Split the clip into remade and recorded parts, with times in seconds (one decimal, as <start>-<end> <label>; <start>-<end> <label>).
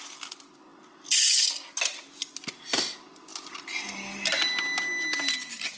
0.0-5.8 recorded